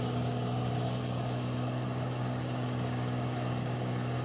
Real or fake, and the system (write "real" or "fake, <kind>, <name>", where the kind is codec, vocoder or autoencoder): fake, codec, DAC